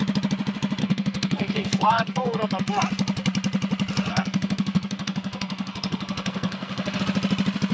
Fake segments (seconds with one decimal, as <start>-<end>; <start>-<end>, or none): 0.8-2.8; 4.1-7.0